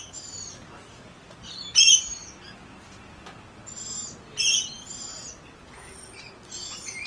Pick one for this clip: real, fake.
real